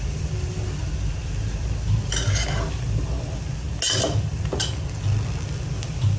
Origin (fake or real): real